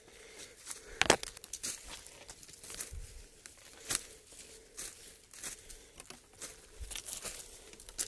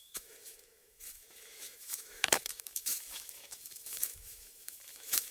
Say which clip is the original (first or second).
first